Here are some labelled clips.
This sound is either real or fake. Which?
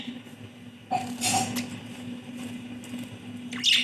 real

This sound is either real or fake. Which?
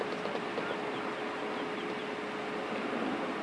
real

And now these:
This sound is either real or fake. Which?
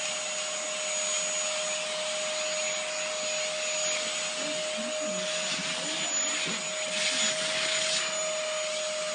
real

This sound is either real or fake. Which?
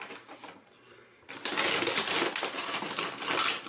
real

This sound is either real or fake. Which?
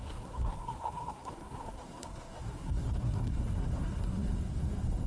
fake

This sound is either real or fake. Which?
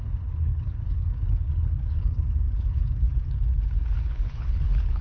fake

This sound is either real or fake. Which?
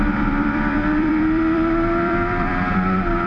fake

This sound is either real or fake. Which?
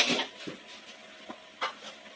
real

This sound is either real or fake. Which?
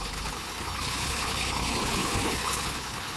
fake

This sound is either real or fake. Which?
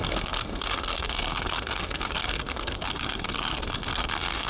fake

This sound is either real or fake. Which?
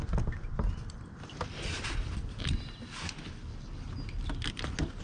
real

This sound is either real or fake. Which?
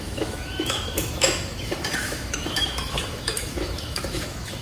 fake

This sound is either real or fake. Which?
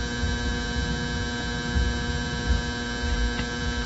real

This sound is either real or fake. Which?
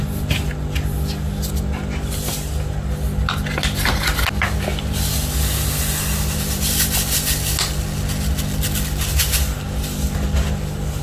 real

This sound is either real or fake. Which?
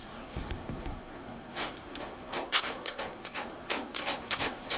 fake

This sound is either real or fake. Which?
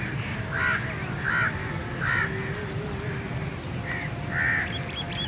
real